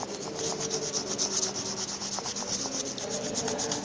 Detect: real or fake real